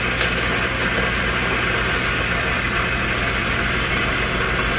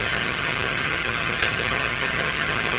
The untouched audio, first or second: first